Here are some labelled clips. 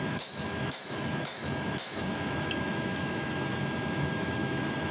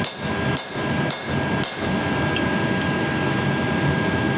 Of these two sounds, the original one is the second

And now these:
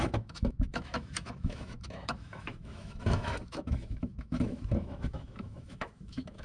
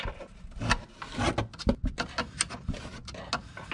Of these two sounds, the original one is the second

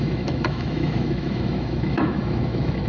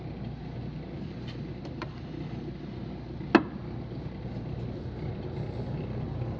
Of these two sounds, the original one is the second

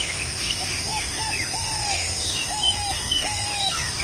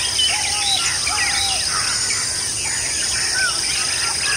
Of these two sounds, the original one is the second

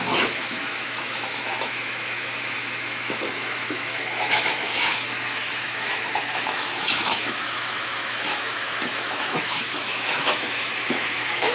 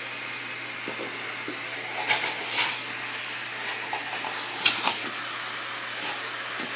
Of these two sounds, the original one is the second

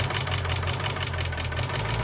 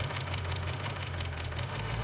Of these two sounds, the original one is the first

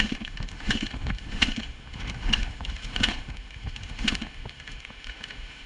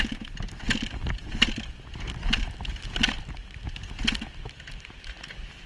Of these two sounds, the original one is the second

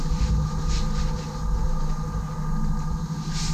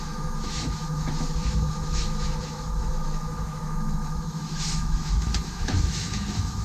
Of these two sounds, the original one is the first